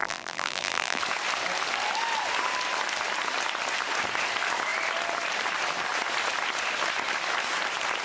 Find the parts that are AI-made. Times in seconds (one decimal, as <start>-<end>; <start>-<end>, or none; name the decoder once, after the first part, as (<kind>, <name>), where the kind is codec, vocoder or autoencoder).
0.0-1.0 (vocoder, BigVGAN v2)